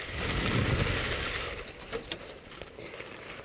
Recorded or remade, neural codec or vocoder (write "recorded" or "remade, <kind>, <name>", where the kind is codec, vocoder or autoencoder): remade, vocoder, BigVGAN v2